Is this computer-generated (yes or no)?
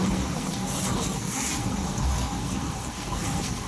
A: yes